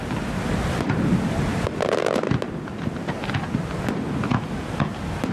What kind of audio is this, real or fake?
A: real